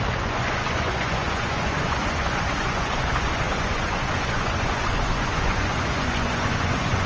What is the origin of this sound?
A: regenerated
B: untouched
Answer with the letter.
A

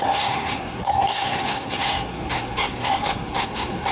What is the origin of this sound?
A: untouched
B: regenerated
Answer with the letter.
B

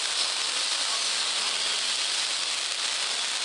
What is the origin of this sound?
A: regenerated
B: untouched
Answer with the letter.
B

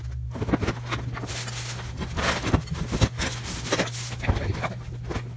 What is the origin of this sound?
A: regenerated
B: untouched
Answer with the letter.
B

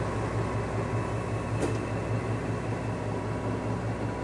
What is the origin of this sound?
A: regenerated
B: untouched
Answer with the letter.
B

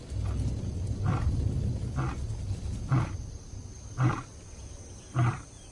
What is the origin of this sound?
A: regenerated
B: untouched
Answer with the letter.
B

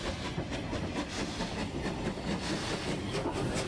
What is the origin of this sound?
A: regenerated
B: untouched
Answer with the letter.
B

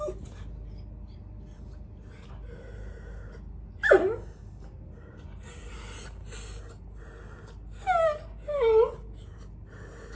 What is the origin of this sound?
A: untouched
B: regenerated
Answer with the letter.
A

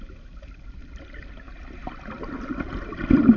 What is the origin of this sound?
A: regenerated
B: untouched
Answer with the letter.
B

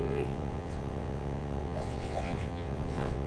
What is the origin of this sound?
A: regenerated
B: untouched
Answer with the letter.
A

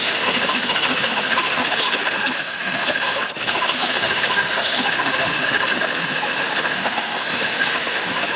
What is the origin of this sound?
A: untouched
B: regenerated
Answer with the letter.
B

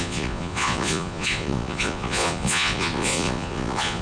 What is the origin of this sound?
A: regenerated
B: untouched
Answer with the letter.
A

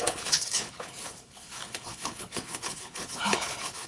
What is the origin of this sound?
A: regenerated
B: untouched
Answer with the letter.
A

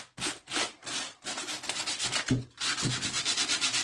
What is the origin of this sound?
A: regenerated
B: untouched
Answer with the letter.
B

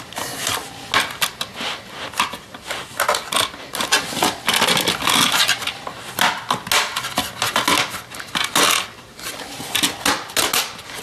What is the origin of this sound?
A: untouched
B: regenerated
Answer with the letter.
A